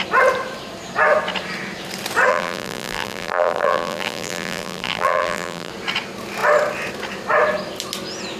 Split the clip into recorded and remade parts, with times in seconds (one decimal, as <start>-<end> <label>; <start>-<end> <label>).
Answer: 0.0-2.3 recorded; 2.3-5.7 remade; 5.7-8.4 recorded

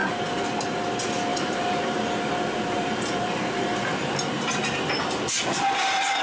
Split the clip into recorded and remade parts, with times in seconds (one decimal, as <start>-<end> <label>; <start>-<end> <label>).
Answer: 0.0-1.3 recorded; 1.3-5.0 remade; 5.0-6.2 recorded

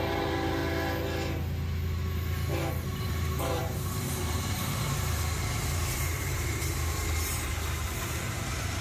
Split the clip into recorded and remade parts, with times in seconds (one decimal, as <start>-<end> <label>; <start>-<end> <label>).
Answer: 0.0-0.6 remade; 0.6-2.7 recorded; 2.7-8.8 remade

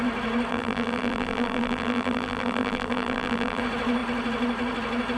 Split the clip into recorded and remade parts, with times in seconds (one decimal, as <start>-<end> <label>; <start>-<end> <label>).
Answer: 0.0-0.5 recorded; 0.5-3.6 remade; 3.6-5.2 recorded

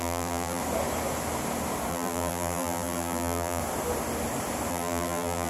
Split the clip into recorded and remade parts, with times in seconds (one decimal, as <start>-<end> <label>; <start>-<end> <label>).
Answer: 0.0-0.6 remade; 0.6-1.9 recorded; 1.9-3.6 remade; 3.6-4.7 recorded; 4.7-5.5 remade

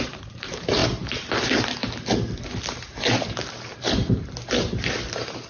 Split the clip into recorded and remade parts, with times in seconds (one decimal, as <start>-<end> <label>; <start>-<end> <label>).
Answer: 0.0-0.8 remade; 0.8-1.4 recorded; 1.4-1.8 remade; 1.8-4.5 recorded; 4.5-5.5 remade

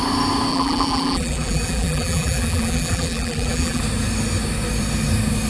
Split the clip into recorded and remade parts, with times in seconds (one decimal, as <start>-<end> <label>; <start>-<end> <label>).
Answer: 0.0-0.5 recorded; 0.5-3.8 remade; 3.8-5.5 recorded